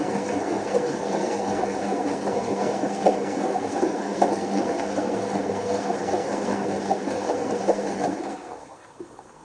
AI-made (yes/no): yes